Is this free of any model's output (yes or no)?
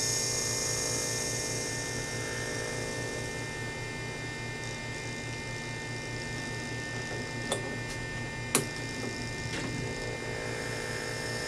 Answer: yes